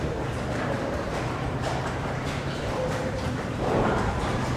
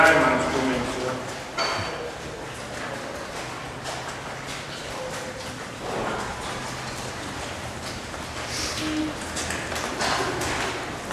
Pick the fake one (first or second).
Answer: first